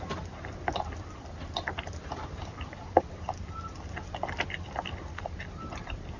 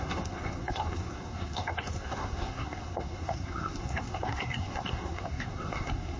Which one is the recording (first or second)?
first